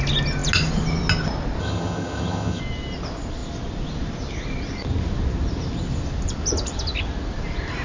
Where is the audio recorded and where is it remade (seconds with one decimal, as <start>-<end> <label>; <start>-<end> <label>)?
0.0-1.6 recorded; 1.6-2.6 remade; 2.6-7.8 recorded